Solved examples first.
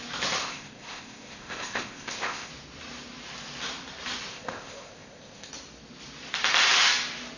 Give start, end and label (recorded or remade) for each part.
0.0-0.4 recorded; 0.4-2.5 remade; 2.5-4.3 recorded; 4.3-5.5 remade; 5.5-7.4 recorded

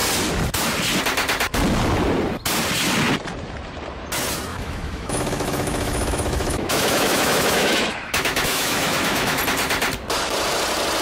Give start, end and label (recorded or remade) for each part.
0.0-4.5 recorded; 4.5-9.4 remade; 9.4-11.0 recorded

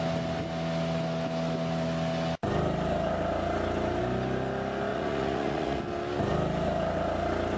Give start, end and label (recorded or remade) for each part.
0.0-4.9 recorded; 4.9-5.8 remade; 5.8-7.6 recorded

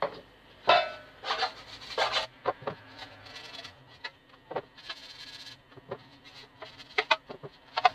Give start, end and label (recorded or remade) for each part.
0.0-6.1 recorded; 6.1-7.9 remade

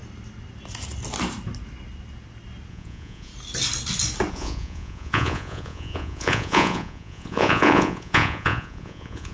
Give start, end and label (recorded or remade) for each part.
0.0-2.7 recorded; 2.7-3.3 remade; 3.3-4.3 recorded; 4.3-9.3 remade

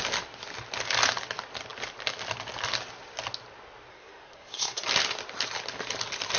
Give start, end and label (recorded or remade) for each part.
0.0-3.9 recorded; 3.9-4.8 remade; 4.8-6.4 recorded

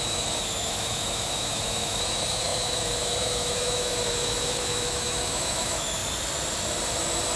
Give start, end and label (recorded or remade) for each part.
0.0-6.0 remade; 6.0-7.4 recorded